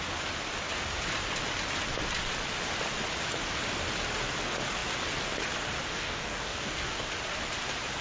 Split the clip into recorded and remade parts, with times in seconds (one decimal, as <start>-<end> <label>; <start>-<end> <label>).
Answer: 0.0-5.9 recorded; 5.9-7.1 remade; 7.1-8.0 recorded